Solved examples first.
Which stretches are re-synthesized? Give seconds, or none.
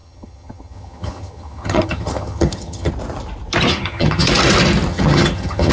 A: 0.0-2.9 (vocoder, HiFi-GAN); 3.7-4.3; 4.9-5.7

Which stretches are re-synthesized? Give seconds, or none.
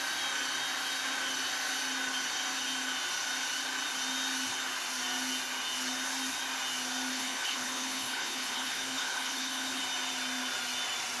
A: 7.1-9.8 (codec, HILCodec)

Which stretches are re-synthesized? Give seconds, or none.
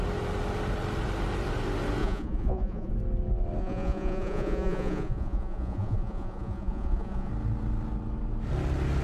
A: 2.0-2.9 (vocoder, Vocos); 3.6-7.3